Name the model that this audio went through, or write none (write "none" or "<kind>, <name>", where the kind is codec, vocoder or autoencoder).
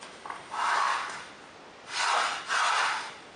none